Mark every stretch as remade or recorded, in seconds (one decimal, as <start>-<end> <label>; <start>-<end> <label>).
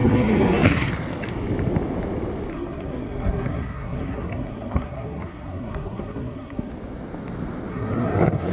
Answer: 0.0-0.9 remade; 0.9-2.5 recorded; 2.5-6.7 remade; 6.7-7.7 recorded; 7.7-8.5 remade